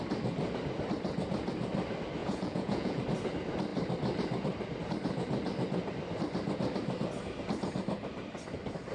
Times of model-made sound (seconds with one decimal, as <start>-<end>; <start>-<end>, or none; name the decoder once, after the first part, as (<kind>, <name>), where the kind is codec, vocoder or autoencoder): 2.2-3.0 (vocoder, Vocos)

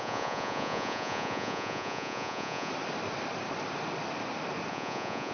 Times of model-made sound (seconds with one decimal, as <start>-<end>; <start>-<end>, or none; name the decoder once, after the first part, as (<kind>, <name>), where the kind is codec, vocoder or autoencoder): 0.0-2.7 (vocoder, Vocos); 4.7-5.3

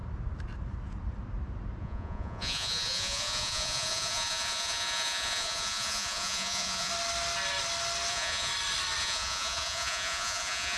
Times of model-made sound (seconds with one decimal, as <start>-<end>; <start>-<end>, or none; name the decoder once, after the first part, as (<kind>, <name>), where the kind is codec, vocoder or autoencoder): 1.8-6.9 (vocoder, Vocos); 8.1-8.5; 9.0-10.8

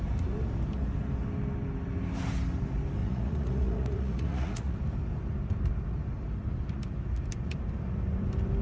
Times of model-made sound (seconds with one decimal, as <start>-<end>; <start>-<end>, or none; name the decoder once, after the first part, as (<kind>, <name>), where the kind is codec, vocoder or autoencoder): 3.0-4.8 (vocoder, Vocos)

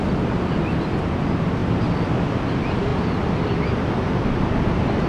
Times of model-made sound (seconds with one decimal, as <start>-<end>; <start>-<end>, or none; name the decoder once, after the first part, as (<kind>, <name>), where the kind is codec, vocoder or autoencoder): none

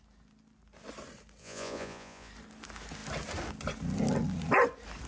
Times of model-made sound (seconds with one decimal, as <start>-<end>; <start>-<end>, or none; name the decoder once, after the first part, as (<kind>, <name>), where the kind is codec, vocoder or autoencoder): 1.4-2.3 (vocoder, Vocos)

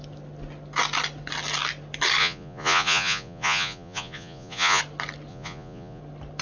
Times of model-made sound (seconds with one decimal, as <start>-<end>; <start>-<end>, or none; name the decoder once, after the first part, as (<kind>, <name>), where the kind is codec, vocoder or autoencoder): 2.2-4.8 (vocoder, Vocos); 5.3-6.0

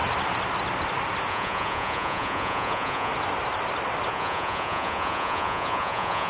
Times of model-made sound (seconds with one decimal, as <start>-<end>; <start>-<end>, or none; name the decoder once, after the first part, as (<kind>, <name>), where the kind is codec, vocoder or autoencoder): 1.3-3.1 (vocoder, Vocos); 4.1-6.3